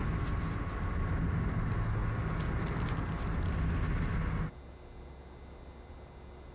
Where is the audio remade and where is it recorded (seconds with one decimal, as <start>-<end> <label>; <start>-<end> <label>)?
0.0-6.5 recorded